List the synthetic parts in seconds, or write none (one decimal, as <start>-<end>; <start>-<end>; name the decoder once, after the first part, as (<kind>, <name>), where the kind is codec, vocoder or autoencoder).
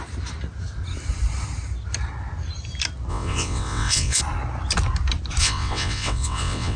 3.1-4.2 (vocoder, WaveNeXt); 5.4-6.8